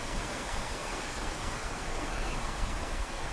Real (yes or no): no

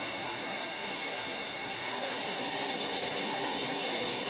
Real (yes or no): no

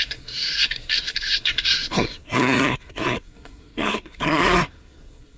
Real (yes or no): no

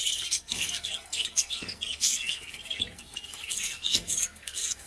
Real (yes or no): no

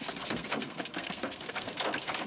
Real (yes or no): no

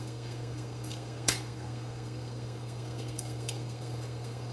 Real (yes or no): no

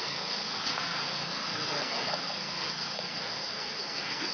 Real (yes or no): no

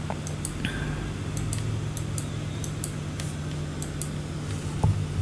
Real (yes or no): yes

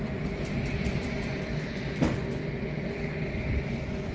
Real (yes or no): yes